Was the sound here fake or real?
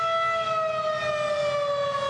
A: real